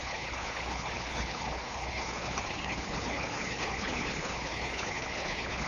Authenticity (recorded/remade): remade